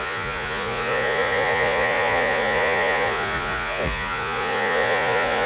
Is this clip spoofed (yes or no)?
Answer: yes